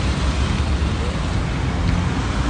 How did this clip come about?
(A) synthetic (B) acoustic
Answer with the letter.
B